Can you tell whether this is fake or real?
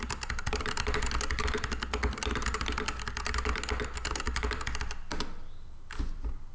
real